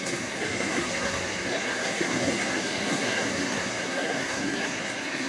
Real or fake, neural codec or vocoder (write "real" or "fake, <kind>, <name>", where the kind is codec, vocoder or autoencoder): fake, codec, SNAC